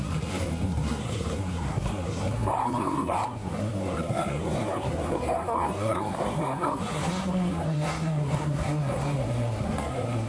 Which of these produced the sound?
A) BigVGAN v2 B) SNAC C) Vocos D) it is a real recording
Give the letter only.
B